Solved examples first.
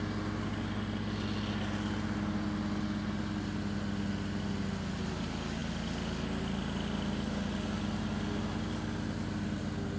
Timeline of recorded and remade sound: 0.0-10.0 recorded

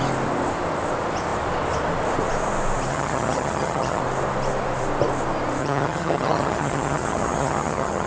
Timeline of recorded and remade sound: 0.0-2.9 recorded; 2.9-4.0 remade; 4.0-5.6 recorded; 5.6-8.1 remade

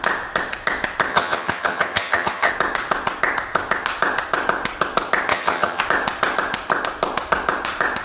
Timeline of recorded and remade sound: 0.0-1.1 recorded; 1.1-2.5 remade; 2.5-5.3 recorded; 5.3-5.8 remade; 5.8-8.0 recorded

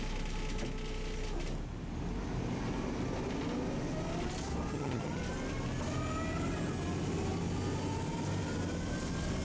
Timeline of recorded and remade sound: 0.0-4.7 recorded; 4.7-5.2 remade; 5.2-9.4 recorded

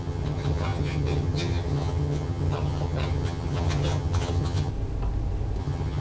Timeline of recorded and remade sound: 0.0-4.7 remade; 4.7-5.6 recorded; 5.6-6.0 remade

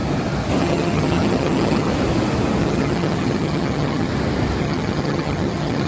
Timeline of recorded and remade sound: 0.0-0.6 recorded; 0.6-1.9 remade; 1.9-2.6 recorded; 2.6-4.1 remade; 4.1-4.6 recorded; 4.6-5.9 remade

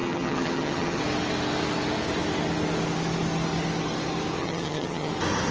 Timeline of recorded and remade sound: 0.0-1.0 remade; 1.0-4.4 recorded; 4.4-5.1 remade; 5.1-5.5 recorded